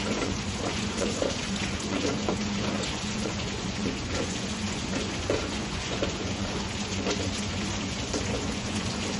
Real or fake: fake